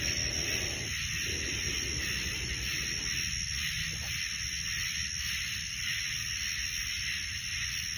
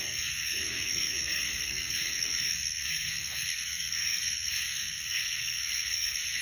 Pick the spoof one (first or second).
second